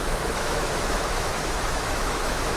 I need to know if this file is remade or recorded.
remade